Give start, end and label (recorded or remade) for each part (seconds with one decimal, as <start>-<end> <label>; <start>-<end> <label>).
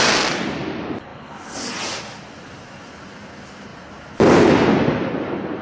0.0-5.6 recorded